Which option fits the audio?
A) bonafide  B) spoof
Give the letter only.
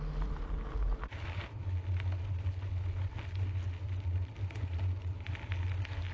A